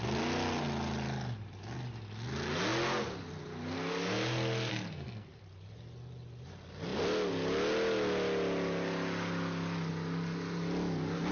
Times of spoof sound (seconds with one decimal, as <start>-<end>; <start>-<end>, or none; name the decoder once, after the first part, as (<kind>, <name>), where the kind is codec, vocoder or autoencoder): 4.7-5.3 (codec, SNAC)